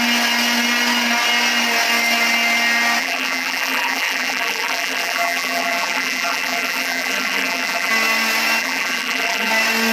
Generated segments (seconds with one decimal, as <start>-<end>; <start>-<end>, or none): 3.0-7.9; 8.6-9.5